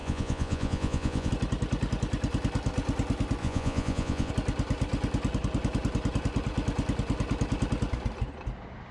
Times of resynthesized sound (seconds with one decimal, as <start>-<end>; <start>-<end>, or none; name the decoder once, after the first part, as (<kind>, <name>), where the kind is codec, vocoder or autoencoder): 0.0-1.3 (vocoder, Vocos); 3.4-4.3